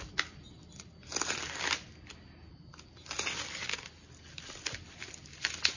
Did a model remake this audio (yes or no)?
no